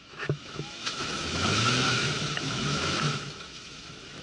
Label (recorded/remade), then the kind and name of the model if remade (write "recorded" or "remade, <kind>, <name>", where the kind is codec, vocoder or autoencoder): remade, autoencoder, DAC-VAE